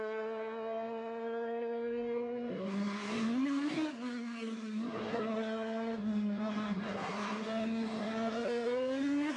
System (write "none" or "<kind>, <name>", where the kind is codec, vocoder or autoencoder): codec, SNAC